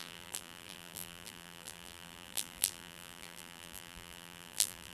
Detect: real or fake fake